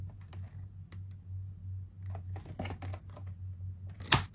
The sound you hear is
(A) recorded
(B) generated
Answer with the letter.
A